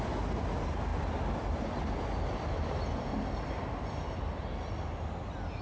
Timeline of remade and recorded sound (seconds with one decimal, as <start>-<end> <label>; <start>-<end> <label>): 0.0-5.6 recorded